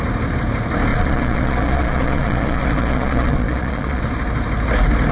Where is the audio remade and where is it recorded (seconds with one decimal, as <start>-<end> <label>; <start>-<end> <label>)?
0.0-0.9 recorded; 0.9-4.0 remade; 4.0-5.1 recorded